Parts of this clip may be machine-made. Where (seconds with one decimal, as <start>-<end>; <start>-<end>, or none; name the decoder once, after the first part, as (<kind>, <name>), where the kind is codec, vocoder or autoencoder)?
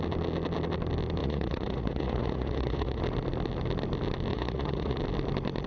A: 1.2-3.0 (vocoder, Vocos); 4.3-5.0